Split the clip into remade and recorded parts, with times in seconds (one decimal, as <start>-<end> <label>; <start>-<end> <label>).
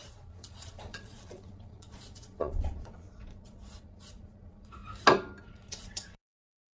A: 0.0-4.8 remade; 4.8-5.4 recorded; 5.4-6.8 remade